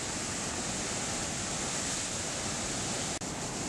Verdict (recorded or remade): recorded